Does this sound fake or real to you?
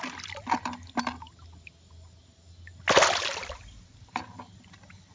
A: real